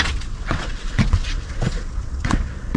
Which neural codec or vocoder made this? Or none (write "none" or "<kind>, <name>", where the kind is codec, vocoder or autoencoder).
vocoder, WaveNeXt